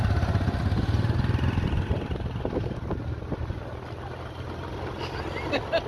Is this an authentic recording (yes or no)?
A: yes